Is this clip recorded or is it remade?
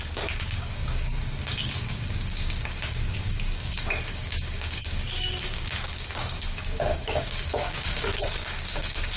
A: remade